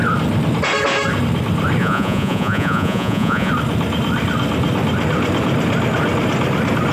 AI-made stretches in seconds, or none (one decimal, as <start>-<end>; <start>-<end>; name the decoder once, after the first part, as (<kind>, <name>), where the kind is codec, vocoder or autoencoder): 1.8-3.5 (vocoder, Vocos)